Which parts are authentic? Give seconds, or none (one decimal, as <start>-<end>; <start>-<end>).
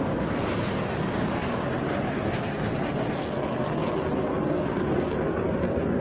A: 0.0-6.0